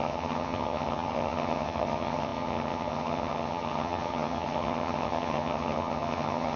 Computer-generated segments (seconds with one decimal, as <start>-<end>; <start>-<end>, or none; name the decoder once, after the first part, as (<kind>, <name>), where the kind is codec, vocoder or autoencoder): 0.0-6.6 (vocoder, HiFi-GAN)